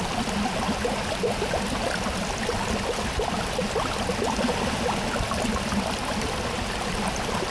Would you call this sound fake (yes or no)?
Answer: no